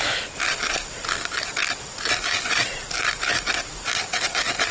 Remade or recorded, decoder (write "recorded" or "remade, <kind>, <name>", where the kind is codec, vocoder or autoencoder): recorded